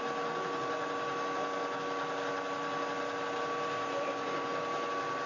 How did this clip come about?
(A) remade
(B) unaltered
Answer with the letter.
B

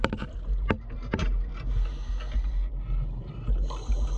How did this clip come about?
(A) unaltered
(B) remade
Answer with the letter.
A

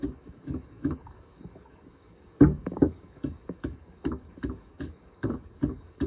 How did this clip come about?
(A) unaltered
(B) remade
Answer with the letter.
B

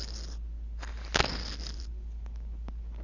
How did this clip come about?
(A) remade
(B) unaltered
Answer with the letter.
B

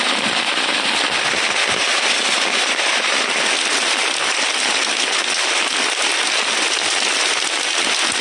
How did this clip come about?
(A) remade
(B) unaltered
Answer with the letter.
B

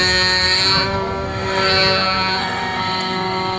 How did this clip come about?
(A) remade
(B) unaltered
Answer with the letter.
A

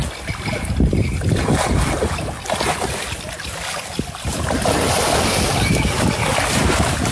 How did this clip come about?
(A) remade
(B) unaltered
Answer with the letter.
B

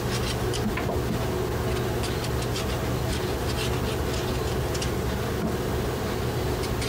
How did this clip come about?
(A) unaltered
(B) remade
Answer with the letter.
A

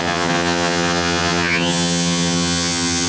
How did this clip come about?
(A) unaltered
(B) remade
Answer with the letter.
B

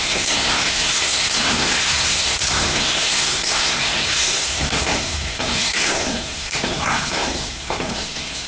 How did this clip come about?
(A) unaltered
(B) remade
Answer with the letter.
B